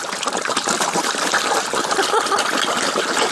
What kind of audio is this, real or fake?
real